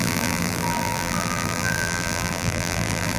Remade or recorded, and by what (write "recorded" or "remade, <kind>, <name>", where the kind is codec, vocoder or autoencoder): remade, vocoder, BigVGAN v2